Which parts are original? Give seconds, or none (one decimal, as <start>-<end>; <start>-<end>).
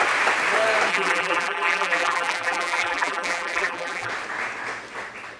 0.0-0.9; 4.1-5.4